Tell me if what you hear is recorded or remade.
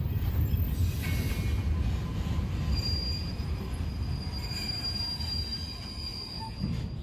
recorded